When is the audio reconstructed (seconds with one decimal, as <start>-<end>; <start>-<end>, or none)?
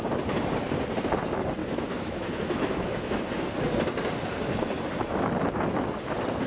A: 1.6-3.2